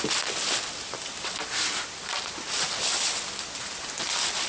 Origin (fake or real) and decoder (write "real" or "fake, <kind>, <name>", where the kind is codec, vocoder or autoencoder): real